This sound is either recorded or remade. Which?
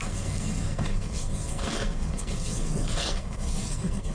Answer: remade